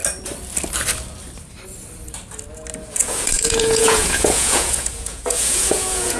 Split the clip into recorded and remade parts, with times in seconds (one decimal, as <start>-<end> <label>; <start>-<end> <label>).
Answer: 0.0-3.0 recorded; 3.0-6.2 remade